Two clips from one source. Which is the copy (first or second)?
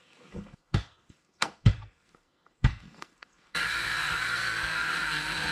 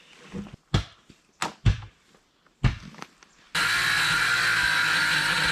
first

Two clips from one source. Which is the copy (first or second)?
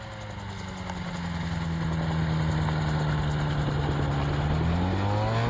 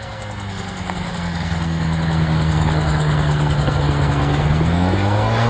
second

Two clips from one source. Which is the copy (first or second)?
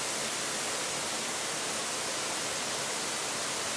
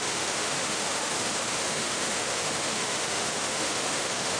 second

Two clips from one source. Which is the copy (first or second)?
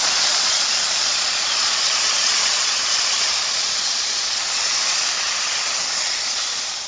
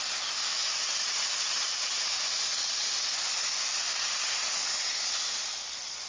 first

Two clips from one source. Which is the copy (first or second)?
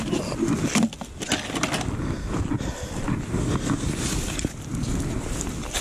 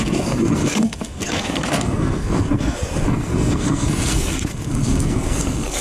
second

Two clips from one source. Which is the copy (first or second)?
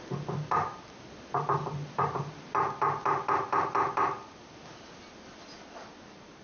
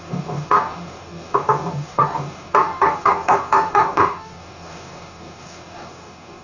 second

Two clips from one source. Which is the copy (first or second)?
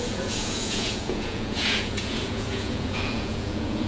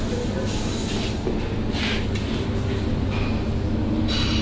first